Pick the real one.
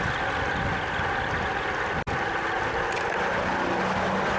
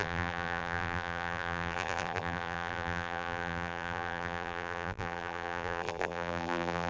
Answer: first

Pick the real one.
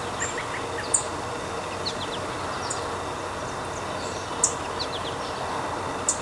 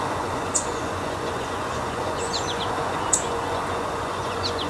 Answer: first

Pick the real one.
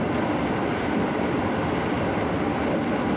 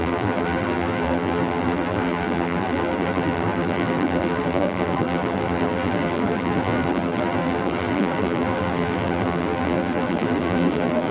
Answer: first